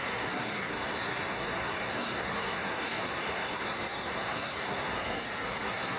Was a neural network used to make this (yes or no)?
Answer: yes